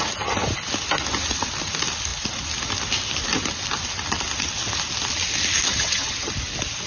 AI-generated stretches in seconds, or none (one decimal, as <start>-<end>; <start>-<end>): 5.7-6.3